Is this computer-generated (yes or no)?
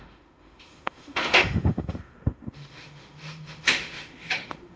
yes